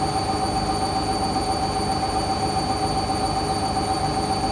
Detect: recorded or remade recorded